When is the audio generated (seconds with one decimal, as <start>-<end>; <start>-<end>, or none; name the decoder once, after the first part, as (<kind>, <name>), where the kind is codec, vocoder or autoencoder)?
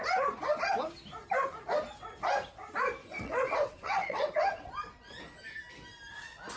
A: 3.0-4.7 (vocoder, WaveNeXt)